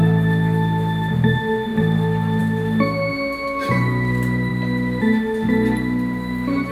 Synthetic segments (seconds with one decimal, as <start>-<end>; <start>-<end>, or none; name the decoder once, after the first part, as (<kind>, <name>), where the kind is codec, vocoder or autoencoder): none